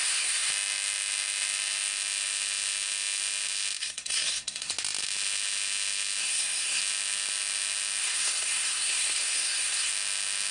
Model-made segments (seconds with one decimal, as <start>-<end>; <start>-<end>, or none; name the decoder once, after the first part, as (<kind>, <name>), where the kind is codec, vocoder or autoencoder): 0.0-0.5 (codec, SNAC); 3.8-4.7; 6.2-6.8; 8.0-9.9